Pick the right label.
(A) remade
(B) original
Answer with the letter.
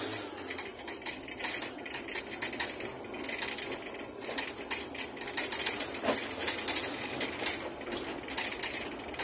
B